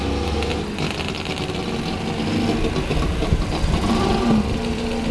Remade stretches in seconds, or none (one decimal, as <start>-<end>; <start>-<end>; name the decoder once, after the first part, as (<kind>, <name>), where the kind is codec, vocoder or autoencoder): 2.9-4.1 (vocoder, BigVGAN v2)